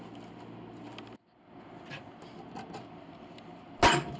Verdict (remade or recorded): recorded